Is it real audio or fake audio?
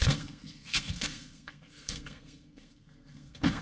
fake